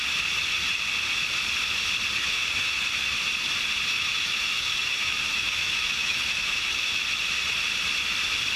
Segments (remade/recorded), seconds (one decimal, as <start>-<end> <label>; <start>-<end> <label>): 0.0-2.2 recorded; 2.2-2.8 remade; 2.8-3.9 recorded; 3.9-7.0 remade; 7.0-8.6 recorded